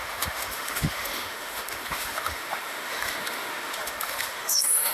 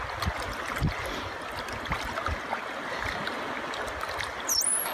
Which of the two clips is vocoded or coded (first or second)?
first